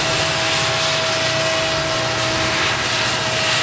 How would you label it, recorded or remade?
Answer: recorded